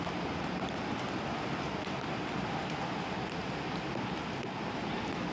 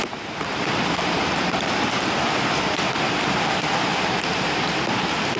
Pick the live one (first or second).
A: first